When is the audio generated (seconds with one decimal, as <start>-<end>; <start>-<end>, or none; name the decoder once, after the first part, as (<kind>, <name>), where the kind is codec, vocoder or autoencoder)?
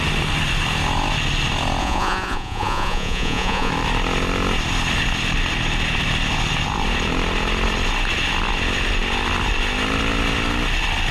1.8-3.7 (vocoder, Vocos)